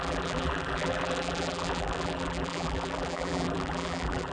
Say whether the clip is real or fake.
fake